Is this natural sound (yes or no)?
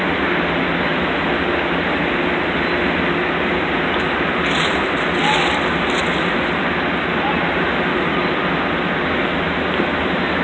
yes